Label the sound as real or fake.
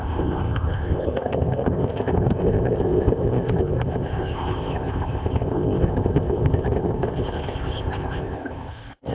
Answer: fake